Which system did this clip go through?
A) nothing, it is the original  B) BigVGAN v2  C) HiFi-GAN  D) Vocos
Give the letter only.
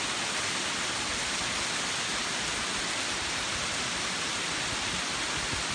A